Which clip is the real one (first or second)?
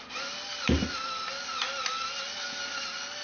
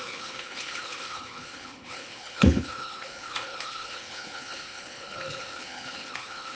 first